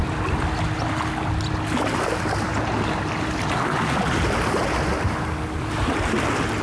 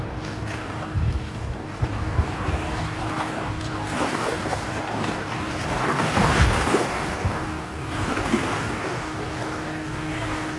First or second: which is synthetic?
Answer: second